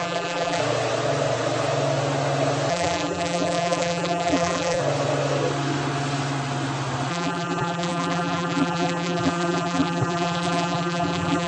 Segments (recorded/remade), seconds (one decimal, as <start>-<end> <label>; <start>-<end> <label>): 0.0-0.6 remade; 0.6-2.7 recorded; 2.7-4.8 remade; 4.8-7.1 recorded; 7.1-11.5 remade